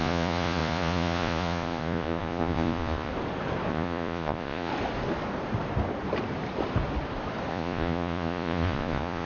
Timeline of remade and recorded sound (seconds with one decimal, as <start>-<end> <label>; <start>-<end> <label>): 0.0-3.1 remade; 3.1-3.7 recorded; 3.7-4.7 remade; 4.7-7.5 recorded; 7.5-9.3 remade